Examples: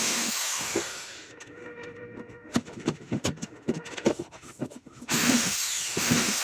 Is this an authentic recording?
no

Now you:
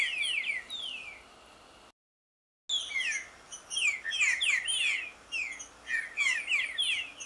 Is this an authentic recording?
yes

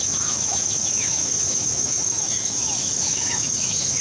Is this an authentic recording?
no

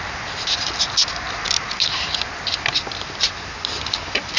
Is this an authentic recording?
yes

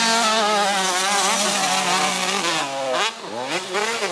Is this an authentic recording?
yes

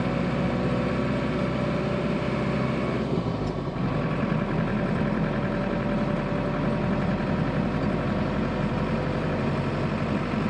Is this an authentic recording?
yes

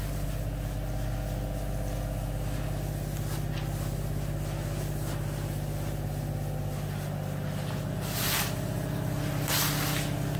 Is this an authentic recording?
yes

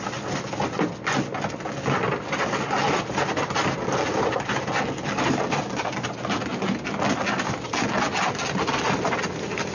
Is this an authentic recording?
yes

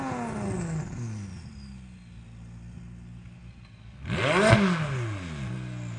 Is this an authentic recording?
yes